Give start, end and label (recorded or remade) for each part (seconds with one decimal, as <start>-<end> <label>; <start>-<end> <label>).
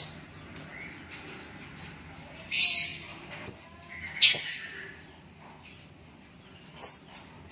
0.0-7.5 recorded